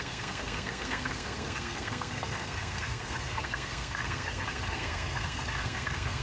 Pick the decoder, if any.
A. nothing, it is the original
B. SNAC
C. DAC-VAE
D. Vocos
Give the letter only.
B